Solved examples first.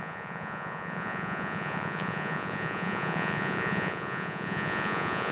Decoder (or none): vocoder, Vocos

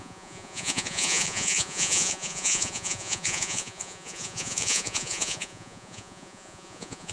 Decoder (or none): vocoder, Vocos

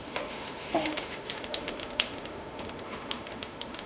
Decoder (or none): autoencoder, DAC-VAE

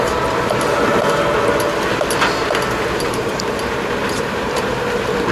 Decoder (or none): none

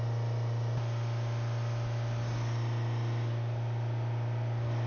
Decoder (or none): none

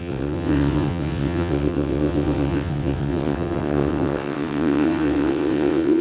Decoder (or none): vocoder, WaveNeXt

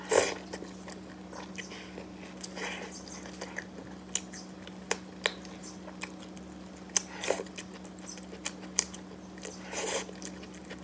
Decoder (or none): none